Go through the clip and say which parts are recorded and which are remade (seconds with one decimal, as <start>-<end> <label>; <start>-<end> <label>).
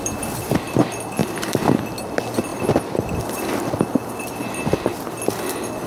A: 0.0-1.2 recorded; 1.2-1.8 remade; 1.8-2.5 recorded; 2.5-4.6 remade; 4.6-5.9 recorded